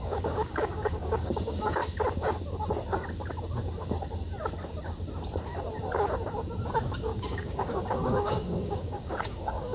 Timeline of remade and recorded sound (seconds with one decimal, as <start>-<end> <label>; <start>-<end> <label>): 0.0-1.8 remade; 1.8-7.0 recorded; 7.0-9.7 remade